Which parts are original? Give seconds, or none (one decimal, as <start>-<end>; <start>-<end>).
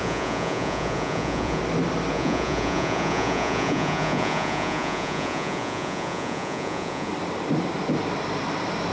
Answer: 1.6-2.1; 7.1-8.9